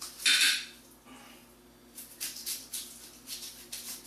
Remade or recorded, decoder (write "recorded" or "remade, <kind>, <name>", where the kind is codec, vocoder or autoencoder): recorded